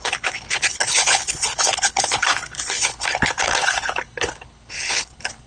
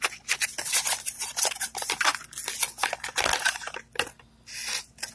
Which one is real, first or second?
second